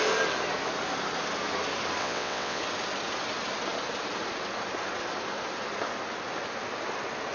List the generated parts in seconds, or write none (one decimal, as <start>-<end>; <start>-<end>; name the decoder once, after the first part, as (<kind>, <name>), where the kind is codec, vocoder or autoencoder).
2.0-2.6 (vocoder, WaveNeXt)